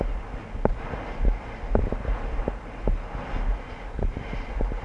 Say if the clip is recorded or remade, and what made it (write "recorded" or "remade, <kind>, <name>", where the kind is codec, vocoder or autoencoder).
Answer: recorded